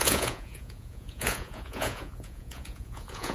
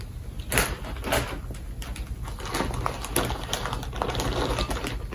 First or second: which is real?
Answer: second